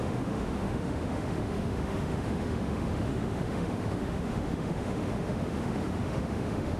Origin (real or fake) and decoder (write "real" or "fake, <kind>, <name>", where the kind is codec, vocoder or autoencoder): fake, autoencoder, DAC-VAE